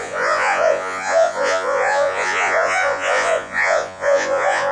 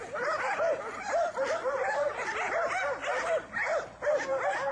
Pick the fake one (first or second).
first